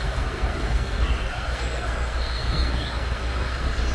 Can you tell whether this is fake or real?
fake